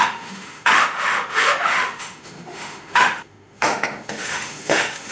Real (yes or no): no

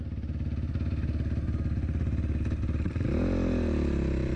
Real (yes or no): yes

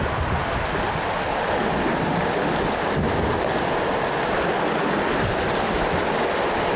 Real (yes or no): yes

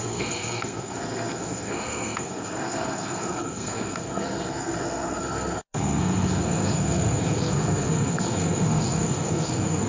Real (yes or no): no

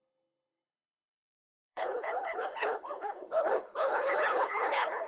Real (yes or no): no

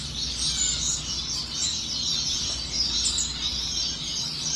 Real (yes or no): yes